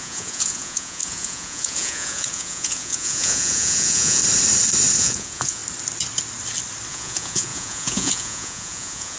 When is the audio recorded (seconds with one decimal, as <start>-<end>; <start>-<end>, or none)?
4.2-5.0; 5.6-6.9